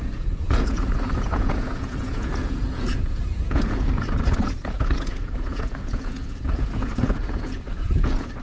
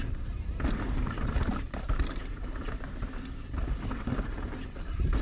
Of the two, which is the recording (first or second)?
second